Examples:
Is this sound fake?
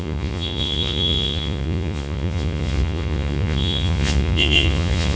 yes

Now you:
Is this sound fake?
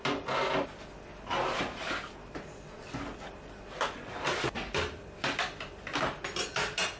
no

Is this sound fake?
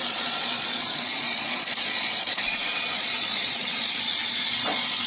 yes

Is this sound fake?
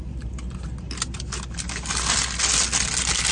no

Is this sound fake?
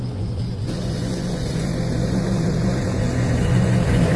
yes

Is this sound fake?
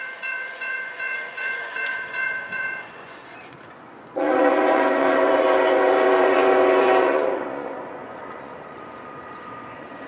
yes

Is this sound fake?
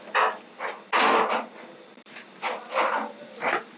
no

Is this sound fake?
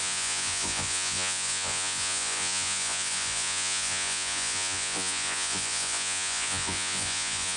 yes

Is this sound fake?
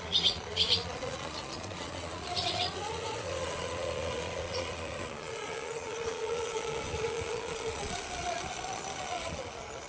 yes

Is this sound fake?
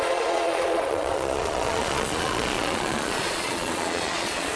yes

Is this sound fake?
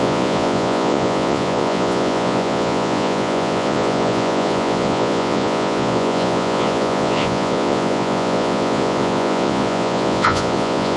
yes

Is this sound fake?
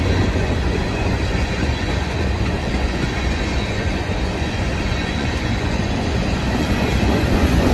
yes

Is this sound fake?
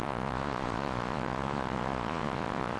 yes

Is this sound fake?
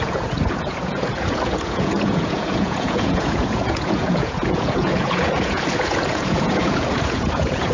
yes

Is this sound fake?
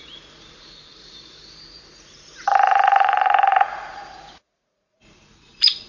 yes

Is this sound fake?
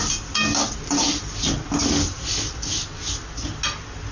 no